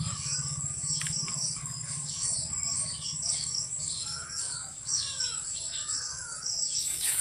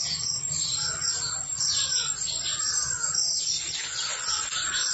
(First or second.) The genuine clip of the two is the second